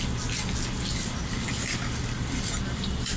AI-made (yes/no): no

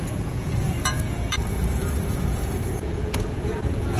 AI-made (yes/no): yes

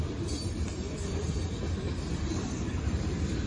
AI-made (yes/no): no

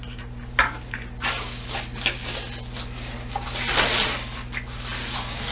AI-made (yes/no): no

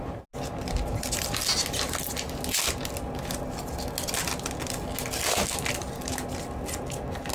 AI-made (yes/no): no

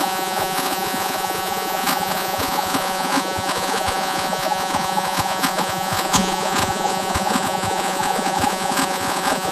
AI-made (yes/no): yes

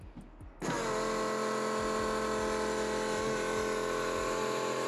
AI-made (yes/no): no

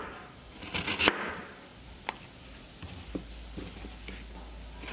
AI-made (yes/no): no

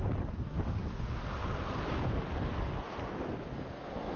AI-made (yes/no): no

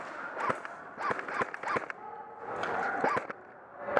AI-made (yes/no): no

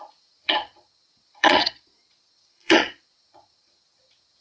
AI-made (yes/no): yes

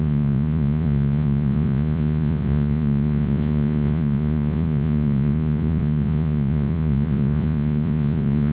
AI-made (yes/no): yes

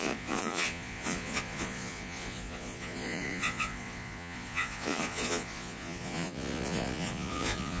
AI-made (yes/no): yes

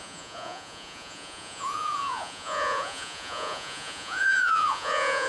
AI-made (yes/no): yes